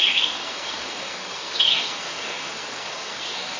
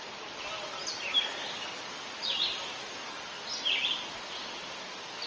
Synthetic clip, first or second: first